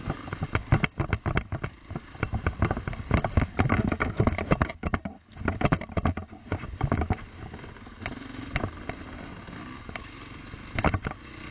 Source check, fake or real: real